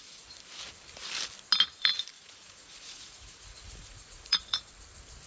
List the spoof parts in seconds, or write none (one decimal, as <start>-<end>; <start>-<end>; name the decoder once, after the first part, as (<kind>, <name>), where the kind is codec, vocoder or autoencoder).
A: 2.1-4.7 (vocoder, Vocos)